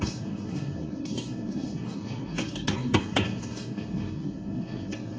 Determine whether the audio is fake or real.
fake